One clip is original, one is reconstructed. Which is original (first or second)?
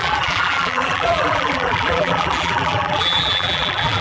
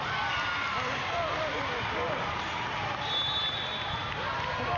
second